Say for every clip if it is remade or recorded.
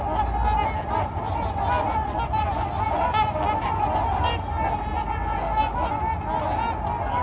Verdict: recorded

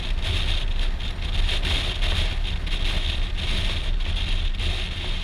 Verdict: recorded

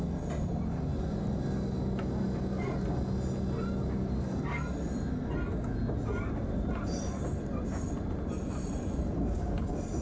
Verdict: recorded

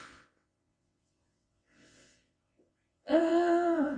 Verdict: remade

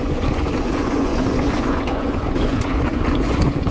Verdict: remade